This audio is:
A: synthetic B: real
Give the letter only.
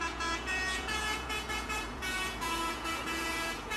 A